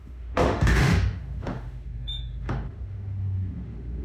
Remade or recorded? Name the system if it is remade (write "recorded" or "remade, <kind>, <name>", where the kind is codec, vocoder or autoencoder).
remade, autoencoder, DAC-VAE